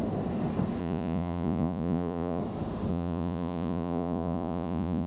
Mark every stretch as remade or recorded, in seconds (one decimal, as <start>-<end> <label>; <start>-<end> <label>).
0.0-0.8 recorded; 0.8-2.4 remade; 2.4-2.9 recorded; 2.9-5.1 remade